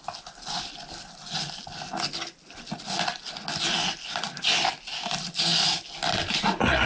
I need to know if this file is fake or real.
real